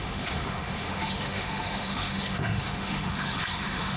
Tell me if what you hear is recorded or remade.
remade